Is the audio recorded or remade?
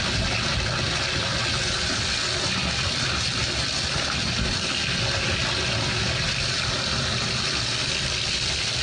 recorded